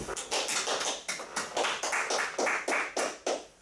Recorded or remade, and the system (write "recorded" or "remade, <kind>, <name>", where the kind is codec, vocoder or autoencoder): recorded